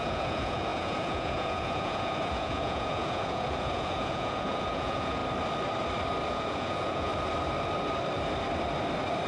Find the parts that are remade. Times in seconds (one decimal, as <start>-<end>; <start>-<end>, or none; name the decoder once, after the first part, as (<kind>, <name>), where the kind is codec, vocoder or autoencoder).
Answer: 0.0-5.2 (vocoder, Vocos); 6.3-7.1